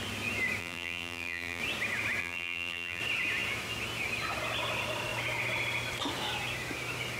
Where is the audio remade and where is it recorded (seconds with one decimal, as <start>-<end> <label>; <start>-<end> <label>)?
0.0-0.6 recorded; 0.6-1.6 remade; 1.6-2.2 recorded; 2.2-3.0 remade; 3.0-7.2 recorded